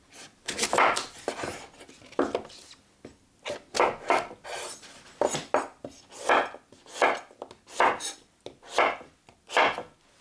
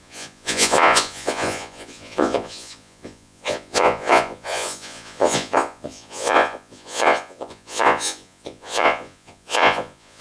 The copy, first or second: second